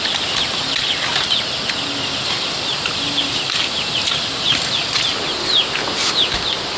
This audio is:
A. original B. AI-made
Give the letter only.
A